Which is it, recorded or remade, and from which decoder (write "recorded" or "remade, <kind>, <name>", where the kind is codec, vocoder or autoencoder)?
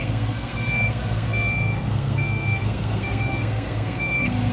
remade, codec, SNAC